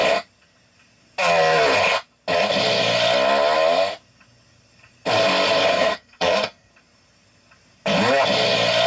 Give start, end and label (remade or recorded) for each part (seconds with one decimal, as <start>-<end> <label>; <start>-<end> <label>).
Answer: 0.0-5.7 recorded; 5.7-6.7 remade; 6.7-8.9 recorded